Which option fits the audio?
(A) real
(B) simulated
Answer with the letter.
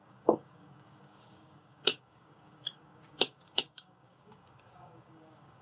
B